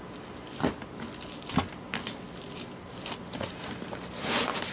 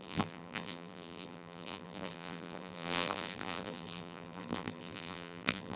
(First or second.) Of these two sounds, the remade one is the second